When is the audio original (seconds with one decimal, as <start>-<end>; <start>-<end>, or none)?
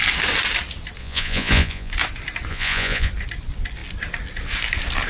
0.0-1.0; 1.9-2.5; 3.1-5.1